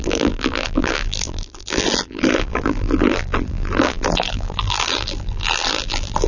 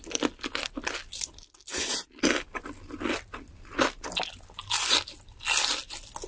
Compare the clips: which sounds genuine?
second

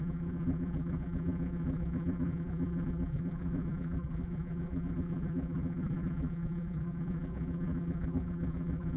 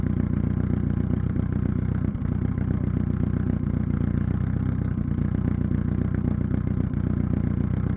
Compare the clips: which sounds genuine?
second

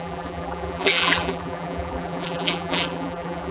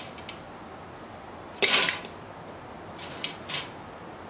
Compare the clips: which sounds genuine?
second